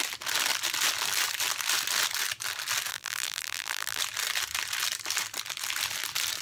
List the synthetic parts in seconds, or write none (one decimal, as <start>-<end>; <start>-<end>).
2.9-4.0